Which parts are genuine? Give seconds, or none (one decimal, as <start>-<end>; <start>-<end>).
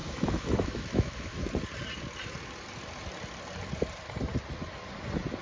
1.5-5.4